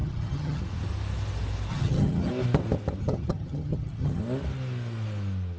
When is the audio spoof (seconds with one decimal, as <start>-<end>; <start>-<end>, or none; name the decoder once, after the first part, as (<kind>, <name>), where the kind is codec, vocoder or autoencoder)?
0.0-0.6 (vocoder, HiFi-GAN); 1.7-2.3; 3.0-4.2